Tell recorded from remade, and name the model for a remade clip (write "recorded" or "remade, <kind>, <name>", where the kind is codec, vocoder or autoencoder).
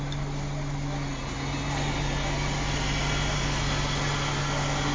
recorded